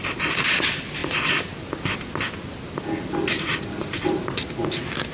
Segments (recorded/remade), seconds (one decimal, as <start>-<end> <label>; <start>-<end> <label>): 0.0-5.1 recorded